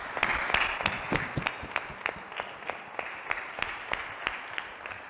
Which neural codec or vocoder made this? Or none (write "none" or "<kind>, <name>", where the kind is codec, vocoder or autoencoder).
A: none